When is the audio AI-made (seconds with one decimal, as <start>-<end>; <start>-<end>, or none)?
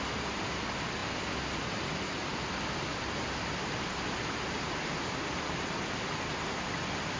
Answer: none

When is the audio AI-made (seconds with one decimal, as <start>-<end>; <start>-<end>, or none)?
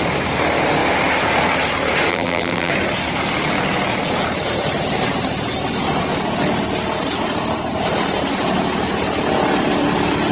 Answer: 2.1-2.7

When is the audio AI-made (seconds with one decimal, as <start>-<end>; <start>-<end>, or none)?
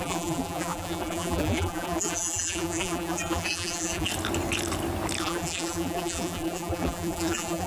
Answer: 0.0-4.1; 5.2-7.7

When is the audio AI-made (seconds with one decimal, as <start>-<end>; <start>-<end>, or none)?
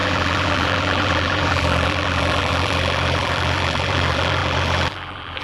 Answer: 0.0-5.4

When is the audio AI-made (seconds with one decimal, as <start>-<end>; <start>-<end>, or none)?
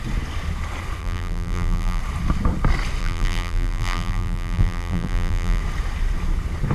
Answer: 1.0-2.0; 3.0-5.6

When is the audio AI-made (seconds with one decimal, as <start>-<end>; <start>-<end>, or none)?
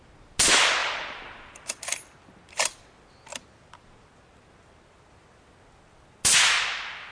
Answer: none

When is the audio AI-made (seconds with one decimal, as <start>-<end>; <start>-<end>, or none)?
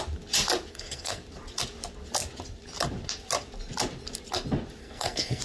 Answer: 0.7-1.2; 4.8-5.4